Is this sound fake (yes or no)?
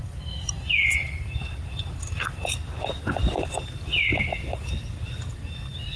no